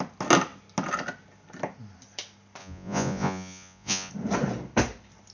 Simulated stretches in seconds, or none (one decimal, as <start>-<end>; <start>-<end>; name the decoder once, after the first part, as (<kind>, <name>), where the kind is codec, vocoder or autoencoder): 2.6-4.1 (vocoder, Vocos)